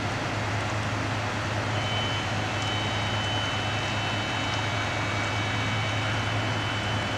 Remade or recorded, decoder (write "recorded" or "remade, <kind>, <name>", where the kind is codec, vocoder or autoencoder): recorded